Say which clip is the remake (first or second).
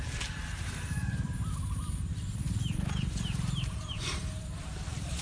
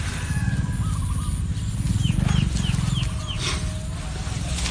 first